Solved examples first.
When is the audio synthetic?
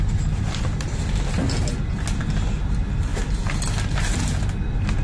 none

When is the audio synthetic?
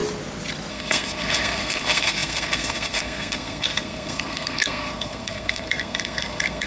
0.7-6.7 (codec, SNAC)